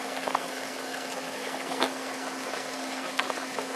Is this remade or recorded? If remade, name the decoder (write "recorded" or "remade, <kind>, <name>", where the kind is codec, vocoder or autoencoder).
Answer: remade, codec, SNAC